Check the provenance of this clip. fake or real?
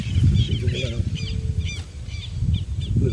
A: real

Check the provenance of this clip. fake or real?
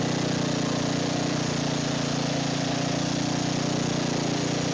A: real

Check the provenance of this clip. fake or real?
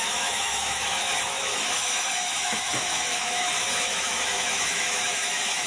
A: fake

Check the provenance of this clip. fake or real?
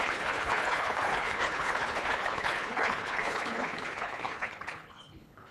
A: fake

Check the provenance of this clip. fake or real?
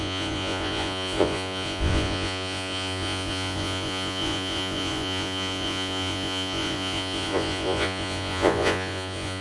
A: fake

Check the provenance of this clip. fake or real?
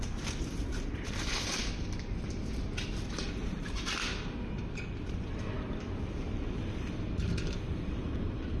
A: fake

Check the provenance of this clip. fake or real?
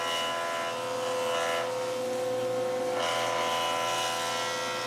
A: real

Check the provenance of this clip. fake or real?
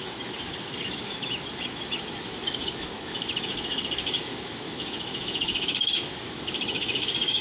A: fake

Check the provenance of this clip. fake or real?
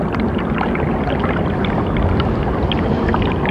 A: real